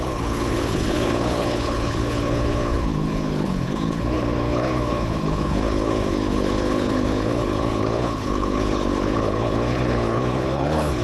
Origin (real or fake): fake